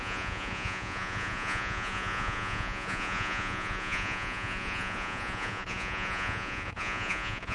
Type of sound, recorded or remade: remade